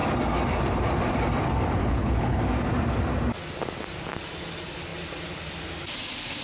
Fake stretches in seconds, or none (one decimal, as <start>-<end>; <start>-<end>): 1.8-2.4